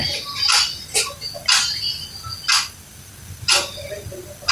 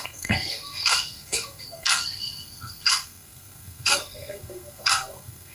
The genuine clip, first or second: first